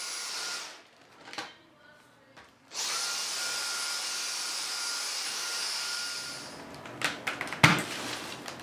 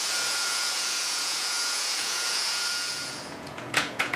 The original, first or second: first